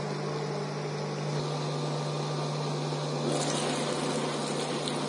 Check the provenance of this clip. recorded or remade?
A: recorded